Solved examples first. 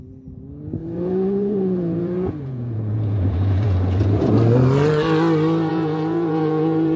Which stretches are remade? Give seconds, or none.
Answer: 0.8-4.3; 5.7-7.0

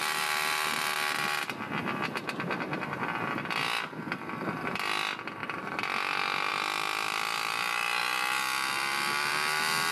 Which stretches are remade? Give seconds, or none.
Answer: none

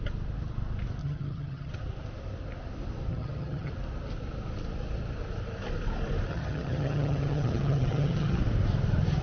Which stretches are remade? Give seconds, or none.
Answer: 1.0-1.7; 3.1-3.7; 6.3-8.4

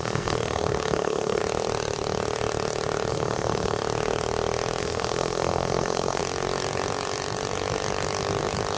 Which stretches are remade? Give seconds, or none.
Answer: 0.0-1.4; 3.1-3.8; 4.8-6.2

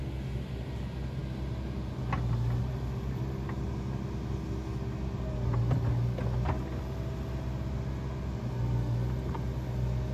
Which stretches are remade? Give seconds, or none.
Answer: none